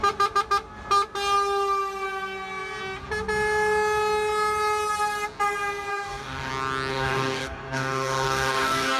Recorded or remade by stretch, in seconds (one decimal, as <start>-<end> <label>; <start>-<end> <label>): 0.0-5.9 recorded; 5.9-6.5 remade; 6.5-6.9 recorded; 6.9-9.0 remade

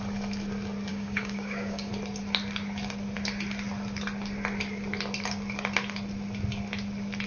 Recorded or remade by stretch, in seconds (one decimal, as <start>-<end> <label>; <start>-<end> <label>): 0.0-0.9 recorded; 0.9-1.9 remade; 1.9-7.3 recorded

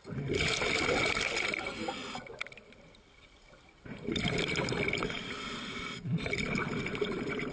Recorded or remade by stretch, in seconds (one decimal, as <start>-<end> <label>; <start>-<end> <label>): 0.0-7.5 recorded